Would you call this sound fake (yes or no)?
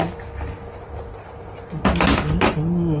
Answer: no